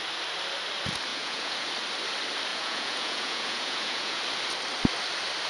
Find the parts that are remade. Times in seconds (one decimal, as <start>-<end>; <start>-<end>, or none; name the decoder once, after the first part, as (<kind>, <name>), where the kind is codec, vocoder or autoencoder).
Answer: 1.1-1.7 (vocoder, Vocos); 2.5-4.2